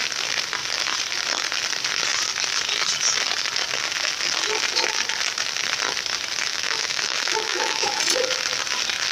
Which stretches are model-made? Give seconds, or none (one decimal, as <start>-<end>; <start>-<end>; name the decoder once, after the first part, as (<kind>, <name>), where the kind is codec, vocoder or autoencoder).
6.5-8.0 (autoencoder, DAC-VAE)